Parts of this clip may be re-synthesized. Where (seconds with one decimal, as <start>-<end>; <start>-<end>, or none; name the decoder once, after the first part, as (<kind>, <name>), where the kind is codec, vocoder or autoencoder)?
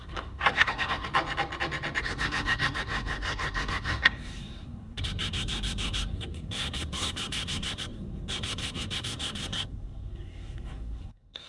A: 0.0-1.1 (codec, SNAC); 2.0-11.5